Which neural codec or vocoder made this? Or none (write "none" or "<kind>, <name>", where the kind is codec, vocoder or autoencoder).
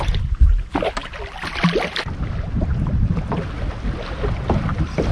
none